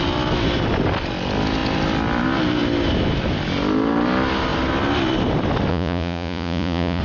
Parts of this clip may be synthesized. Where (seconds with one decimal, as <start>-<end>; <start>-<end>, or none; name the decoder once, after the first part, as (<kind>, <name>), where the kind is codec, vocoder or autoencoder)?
5.7-7.0 (vocoder, Vocos)